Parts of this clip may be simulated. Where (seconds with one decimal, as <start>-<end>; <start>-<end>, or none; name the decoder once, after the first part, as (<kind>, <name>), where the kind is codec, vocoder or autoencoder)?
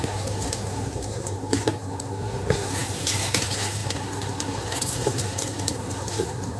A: 0.0-6.6 (codec, SNAC)